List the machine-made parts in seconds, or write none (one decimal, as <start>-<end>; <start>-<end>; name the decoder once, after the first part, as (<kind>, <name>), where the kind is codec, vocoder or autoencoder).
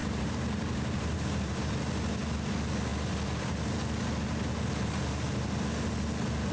0.0-1.6 (vocoder, BigVGAN v2)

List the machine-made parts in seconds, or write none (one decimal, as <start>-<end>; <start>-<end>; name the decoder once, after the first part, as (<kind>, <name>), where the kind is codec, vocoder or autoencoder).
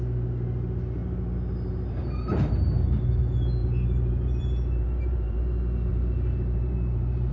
1.0-2.5 (vocoder, BigVGAN v2); 3.6-5.4; 5.9-7.3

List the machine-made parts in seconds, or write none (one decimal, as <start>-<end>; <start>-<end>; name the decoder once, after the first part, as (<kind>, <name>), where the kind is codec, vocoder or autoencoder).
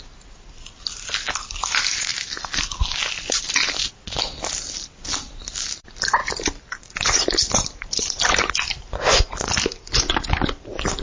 none